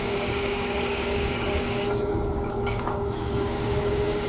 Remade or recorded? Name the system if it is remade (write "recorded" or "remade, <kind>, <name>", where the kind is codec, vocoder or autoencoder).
remade, codec, DAC